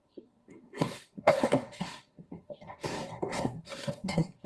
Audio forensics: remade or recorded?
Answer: remade